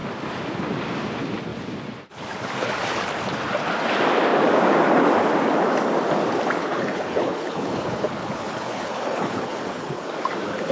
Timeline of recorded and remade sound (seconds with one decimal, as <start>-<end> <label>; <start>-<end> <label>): 0.0-6.6 recorded; 6.6-10.1 remade; 10.1-10.7 recorded